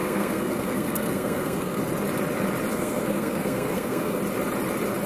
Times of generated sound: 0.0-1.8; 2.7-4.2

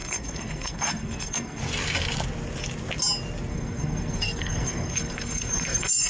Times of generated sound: 0.0-1.6; 3.5-6.1